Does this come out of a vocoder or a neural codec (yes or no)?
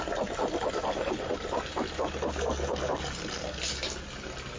no